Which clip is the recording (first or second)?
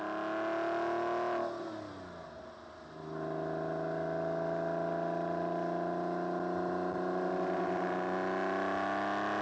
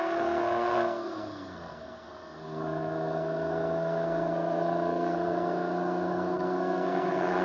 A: first